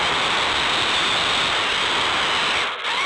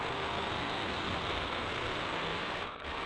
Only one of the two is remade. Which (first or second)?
second